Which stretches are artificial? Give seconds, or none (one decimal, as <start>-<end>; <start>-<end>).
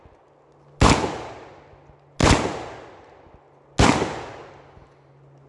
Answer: none